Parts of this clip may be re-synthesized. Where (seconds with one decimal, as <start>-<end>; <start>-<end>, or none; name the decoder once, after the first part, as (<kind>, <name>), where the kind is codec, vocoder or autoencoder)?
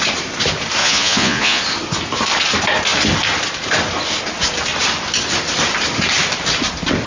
0.8-1.6 (vocoder, Vocos)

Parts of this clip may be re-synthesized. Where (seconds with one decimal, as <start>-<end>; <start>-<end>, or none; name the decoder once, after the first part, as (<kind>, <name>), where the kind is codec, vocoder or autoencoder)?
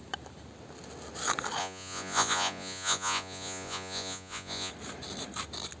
1.6-4.7 (vocoder, Vocos)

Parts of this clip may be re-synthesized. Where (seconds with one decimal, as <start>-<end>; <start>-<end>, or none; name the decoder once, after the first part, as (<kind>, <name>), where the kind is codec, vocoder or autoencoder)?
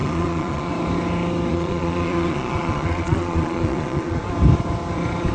0.0-0.7 (vocoder, Vocos); 1.5-4.2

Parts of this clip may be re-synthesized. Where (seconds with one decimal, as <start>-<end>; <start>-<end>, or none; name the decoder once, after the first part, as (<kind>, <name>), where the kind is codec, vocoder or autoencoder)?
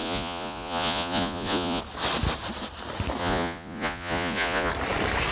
0.0-1.8 (vocoder, Vocos); 3.2-4.7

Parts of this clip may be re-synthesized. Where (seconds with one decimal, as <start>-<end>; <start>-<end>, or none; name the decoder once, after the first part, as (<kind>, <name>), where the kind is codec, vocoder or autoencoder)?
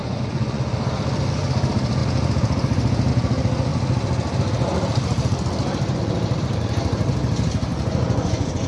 0.0-0.6 (vocoder, Vocos); 7.7-8.7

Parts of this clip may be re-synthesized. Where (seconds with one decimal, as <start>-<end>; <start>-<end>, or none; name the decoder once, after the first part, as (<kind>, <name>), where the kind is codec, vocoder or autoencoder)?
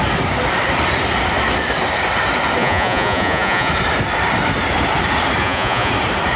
2.6-3.7 (vocoder, Vocos); 5.4-5.9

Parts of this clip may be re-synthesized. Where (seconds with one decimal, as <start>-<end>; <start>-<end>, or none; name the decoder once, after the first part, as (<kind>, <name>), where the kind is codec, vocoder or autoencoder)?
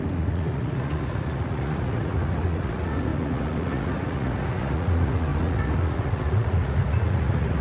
0.0-7.6 (vocoder, Vocos)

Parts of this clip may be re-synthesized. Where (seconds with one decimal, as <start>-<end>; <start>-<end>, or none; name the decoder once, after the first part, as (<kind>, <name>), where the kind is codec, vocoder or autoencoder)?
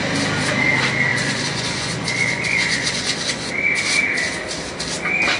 1.1-3.5 (vocoder, Vocos)